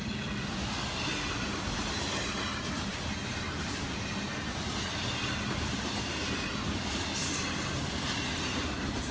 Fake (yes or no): no